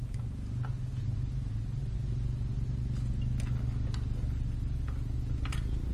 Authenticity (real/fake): real